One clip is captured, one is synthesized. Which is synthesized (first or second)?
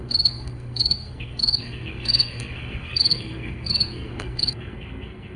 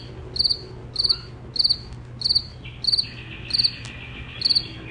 first